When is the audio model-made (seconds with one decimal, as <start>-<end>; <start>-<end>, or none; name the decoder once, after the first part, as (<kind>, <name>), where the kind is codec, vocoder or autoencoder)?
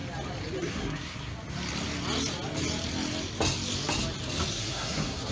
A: 0.6-1.3 (codec, SNAC); 4.5-5.3